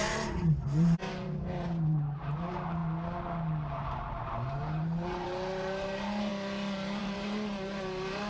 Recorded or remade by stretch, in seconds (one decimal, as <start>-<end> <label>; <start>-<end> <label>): 0.0-2.8 remade; 2.8-4.2 recorded; 4.2-6.3 remade; 6.3-7.0 recorded; 7.0-8.3 remade